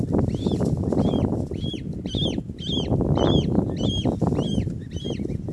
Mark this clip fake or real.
real